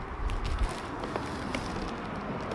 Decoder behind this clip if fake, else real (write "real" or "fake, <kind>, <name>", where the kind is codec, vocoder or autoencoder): real